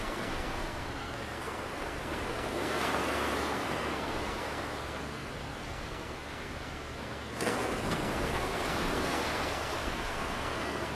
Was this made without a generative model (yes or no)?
no